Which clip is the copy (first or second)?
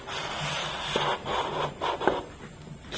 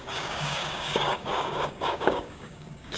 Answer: second